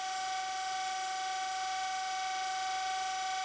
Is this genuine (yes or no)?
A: yes